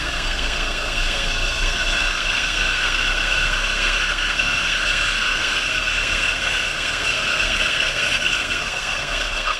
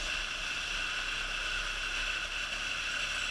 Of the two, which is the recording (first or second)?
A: second